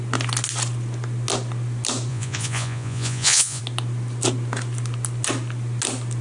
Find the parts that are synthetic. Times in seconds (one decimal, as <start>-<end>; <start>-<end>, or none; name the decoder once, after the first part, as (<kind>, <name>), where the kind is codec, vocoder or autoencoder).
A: 2.1-3.6 (vocoder, Vocos)